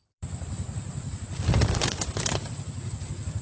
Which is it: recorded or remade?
remade